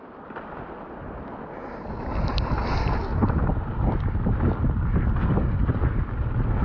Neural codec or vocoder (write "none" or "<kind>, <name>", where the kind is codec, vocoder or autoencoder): none